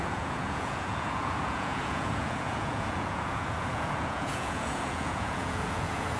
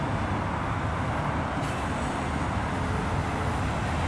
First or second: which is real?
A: second